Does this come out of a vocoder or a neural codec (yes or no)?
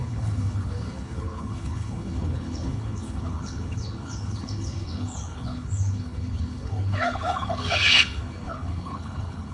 yes